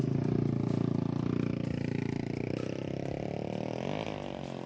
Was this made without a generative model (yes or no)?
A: no